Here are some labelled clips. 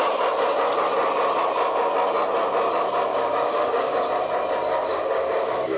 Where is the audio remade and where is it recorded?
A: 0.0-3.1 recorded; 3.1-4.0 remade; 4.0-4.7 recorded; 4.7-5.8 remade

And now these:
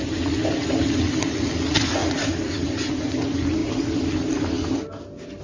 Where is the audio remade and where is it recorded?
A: 0.0-5.4 recorded